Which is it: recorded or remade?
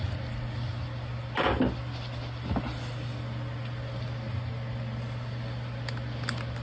recorded